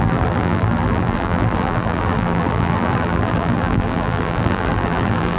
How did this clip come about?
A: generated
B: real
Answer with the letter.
A